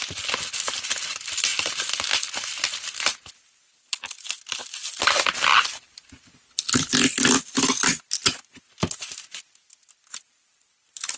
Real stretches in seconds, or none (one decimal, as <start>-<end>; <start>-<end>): 0.0-11.2